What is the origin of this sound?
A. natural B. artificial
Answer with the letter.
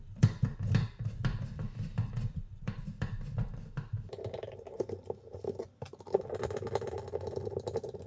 B